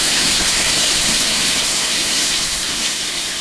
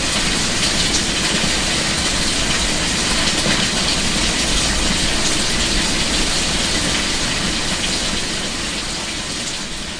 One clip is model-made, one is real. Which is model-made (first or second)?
first